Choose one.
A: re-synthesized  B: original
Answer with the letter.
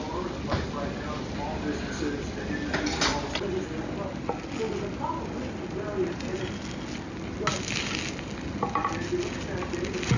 B